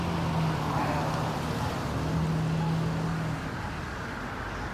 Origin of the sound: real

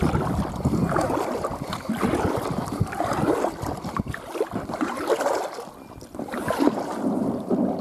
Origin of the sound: real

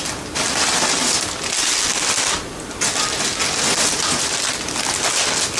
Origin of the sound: real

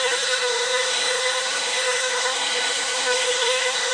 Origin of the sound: fake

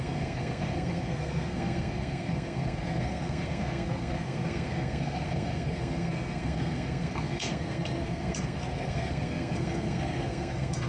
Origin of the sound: fake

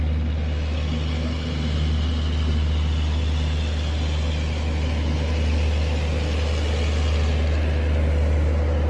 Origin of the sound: real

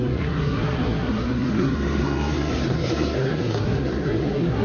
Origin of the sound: fake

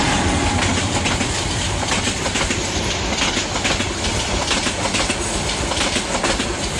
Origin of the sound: real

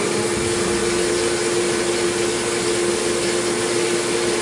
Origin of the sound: real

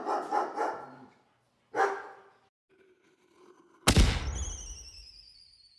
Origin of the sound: real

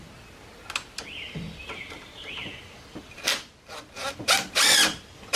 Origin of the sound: real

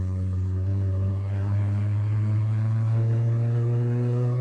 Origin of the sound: fake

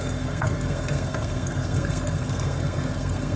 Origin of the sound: fake